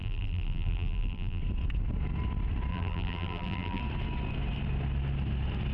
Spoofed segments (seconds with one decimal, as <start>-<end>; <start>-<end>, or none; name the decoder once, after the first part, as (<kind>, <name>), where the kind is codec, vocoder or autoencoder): 0.0-1.4 (vocoder, BigVGAN v2); 2.7-3.8